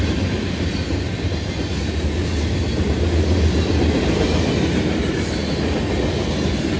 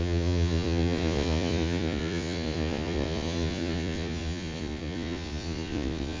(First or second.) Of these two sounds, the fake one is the second